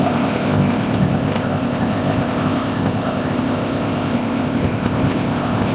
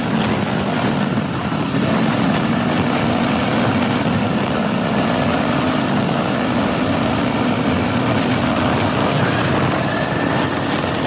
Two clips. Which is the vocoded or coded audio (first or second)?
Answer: first